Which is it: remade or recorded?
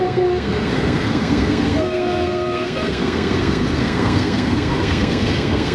remade